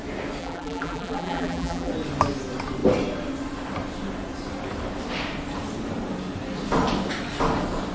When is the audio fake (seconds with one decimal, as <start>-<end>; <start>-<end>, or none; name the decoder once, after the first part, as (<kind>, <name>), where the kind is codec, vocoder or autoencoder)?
0.4-1.9 (vocoder, BigVGAN v2)